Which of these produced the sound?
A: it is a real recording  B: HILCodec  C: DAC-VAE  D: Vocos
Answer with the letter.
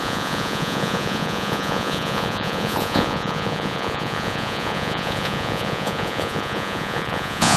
D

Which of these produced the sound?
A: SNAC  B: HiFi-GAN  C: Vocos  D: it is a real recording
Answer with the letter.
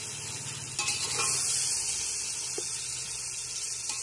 D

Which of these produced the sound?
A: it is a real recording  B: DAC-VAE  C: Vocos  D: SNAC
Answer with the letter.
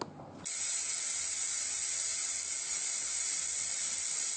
A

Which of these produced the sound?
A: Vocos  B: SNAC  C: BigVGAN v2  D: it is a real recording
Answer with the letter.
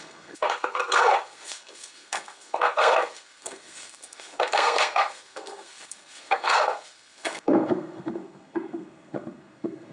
B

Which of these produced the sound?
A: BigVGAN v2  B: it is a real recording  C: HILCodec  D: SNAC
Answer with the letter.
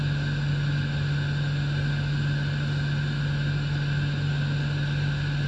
B